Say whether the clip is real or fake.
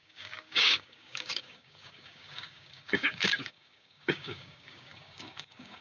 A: fake